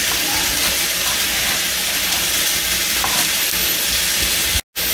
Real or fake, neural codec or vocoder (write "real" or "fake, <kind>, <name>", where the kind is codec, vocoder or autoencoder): real